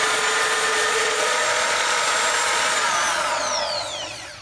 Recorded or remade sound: remade